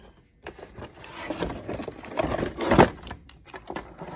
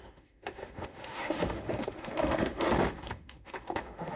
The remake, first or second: second